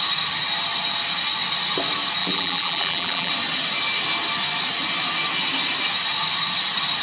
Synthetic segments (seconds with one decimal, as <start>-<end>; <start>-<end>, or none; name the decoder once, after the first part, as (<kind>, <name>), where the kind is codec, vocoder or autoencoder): 2.2-3.3 (vocoder, BigVGAN v2)